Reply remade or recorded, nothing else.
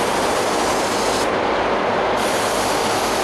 recorded